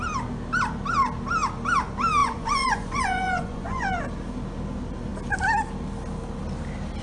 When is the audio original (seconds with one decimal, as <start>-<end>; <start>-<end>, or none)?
0.0-2.2; 4.0-7.0